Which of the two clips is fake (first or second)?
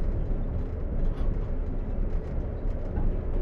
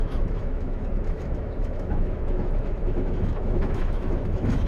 second